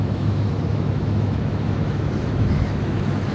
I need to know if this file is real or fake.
fake